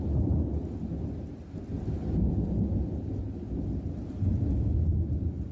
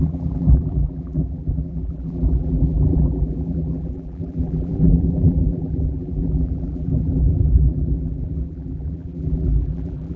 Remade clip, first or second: second